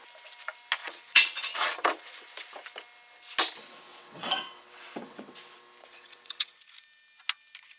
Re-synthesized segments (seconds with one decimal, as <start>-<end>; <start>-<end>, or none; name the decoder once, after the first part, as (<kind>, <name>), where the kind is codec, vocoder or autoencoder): 0.8-2.1 (vocoder, WaveNeXt); 3.9-5.3; 5.8-6.7